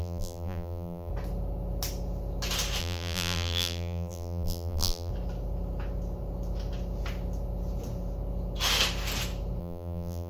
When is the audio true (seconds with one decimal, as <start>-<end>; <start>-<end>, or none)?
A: 1.1-2.8; 5.1-9.6